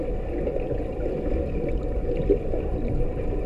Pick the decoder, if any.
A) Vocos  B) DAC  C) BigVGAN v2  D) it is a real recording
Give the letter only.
D